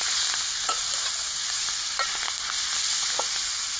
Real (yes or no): yes